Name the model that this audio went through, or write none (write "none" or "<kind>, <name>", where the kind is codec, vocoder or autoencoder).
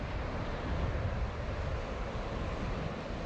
none